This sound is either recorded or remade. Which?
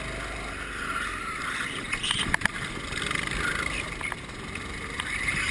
recorded